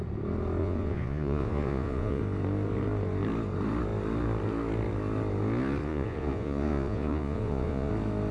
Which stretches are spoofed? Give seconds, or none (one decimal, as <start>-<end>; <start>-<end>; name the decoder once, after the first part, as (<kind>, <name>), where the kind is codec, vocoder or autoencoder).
0.6-2.2 (vocoder, Vocos); 5.8-7.9